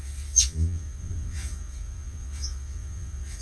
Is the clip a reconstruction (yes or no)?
yes